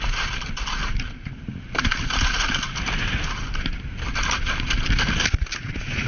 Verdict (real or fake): real